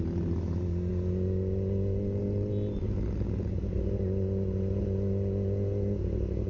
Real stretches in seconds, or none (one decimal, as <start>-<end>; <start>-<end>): 0.0-6.5

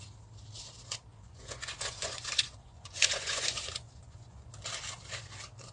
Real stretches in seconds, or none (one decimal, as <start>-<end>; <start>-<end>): 0.0-1.1; 4.5-5.7

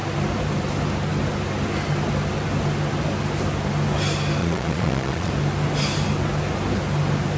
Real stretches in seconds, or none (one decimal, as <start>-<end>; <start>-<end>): 0.0-4.4; 5.3-7.4

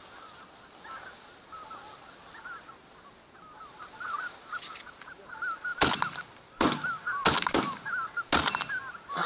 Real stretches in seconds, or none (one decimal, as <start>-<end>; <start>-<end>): 0.0-9.3

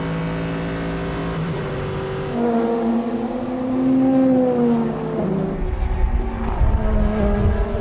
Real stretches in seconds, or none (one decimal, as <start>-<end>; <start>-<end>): 0.0-7.8